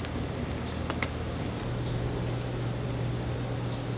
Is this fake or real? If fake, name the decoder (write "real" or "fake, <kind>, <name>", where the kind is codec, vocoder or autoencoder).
real